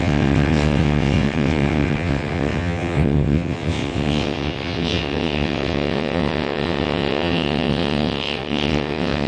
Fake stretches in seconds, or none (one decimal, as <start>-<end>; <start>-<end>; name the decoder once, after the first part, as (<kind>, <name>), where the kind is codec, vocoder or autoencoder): 0.0-9.3 (vocoder, WaveNeXt)